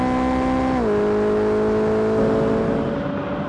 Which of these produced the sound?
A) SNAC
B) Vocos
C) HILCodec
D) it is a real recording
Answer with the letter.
D